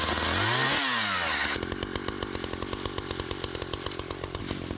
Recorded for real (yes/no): yes